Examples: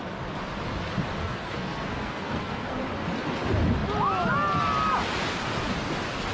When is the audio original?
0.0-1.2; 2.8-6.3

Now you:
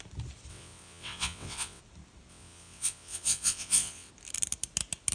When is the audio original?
0.0-0.5; 1.8-2.3; 4.1-5.1